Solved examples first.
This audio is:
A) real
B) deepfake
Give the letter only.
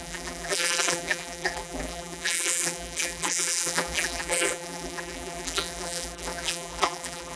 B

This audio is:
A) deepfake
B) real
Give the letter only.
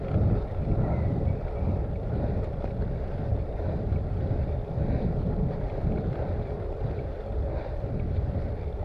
A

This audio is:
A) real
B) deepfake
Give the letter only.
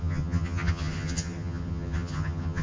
B